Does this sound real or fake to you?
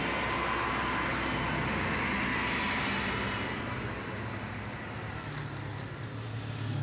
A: real